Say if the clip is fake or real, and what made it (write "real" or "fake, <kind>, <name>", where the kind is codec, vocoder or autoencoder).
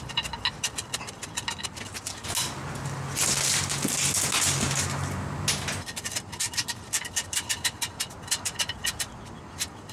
real